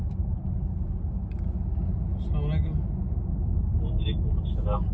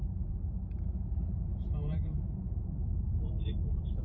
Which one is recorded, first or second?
first